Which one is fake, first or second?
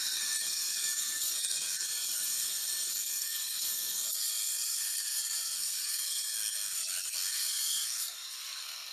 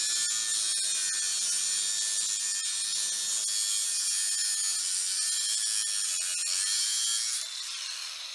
first